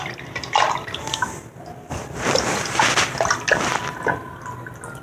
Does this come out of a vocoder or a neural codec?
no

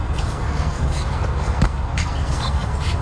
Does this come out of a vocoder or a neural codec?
yes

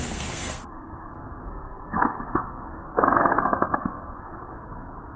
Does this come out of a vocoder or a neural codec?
yes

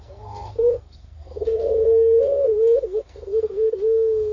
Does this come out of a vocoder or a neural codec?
yes